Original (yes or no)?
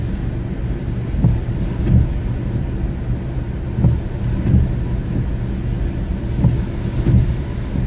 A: yes